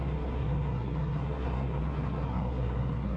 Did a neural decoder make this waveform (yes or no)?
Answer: yes